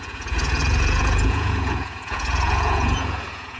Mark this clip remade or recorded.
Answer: remade